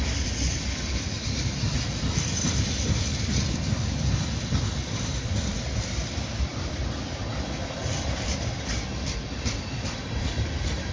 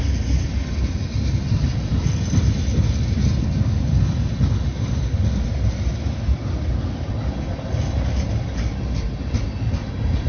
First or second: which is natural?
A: second